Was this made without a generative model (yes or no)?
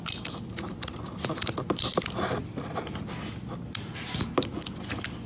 yes